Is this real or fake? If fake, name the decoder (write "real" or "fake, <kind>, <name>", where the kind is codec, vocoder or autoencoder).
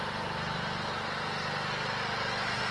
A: real